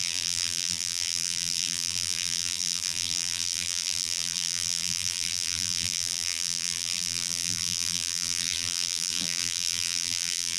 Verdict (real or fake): fake